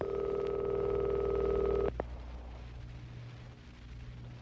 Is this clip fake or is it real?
real